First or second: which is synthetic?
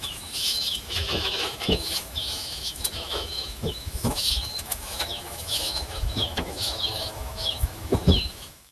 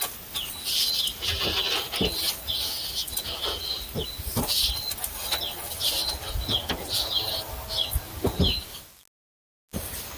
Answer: first